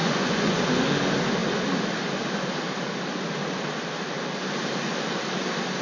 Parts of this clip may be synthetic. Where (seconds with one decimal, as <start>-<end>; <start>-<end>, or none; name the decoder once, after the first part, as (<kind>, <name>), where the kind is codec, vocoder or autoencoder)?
0.0-0.6 (vocoder, Vocos)